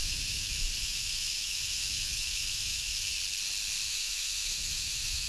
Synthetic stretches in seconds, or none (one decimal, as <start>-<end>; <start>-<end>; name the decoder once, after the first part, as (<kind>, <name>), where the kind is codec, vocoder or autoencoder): 0.0-3.2 (autoencoder, DAC-VAE); 3.9-5.3